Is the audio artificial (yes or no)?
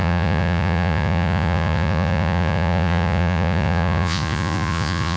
yes